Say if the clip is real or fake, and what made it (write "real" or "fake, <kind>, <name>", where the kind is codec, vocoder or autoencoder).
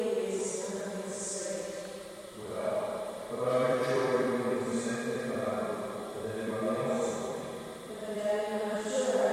fake, vocoder, BigVGAN v2